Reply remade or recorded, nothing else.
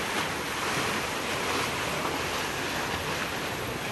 recorded